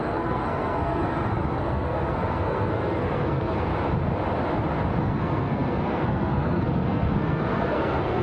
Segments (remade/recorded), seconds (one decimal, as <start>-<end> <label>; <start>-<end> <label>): 0.0-3.7 remade; 3.7-5.0 recorded; 5.0-8.2 remade